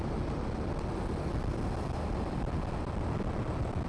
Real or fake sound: real